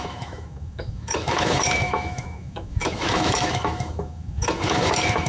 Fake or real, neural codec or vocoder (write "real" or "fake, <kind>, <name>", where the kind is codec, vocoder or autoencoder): fake, autoencoder, DAC-VAE